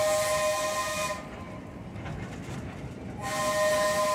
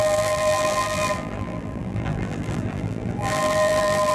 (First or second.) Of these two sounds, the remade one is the second